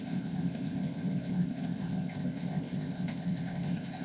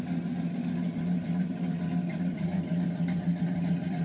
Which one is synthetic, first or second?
first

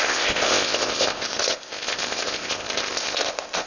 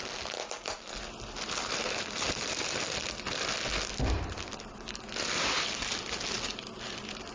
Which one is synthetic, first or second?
first